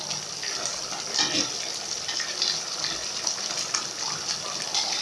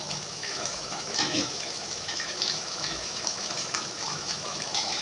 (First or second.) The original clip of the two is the first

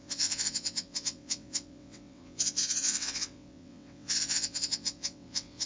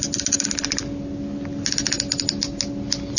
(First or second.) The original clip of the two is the second